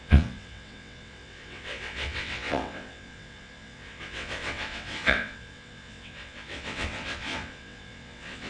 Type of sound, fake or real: fake